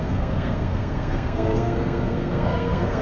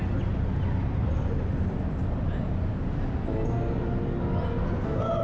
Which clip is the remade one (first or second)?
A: first